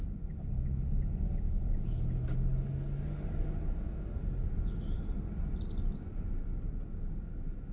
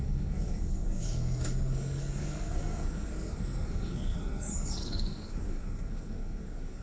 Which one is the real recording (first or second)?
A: first